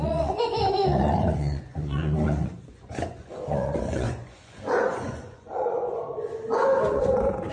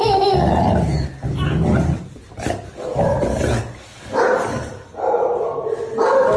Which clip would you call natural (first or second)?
second